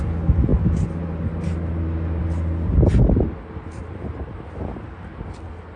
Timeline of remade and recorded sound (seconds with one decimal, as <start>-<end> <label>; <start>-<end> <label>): 0.0-5.8 recorded